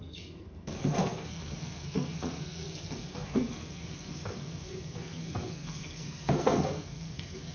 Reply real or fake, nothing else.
fake